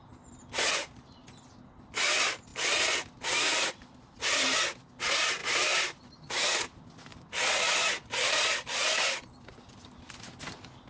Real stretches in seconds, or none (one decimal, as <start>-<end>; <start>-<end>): 0.0-7.1; 9.7-10.9